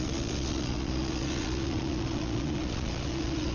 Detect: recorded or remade remade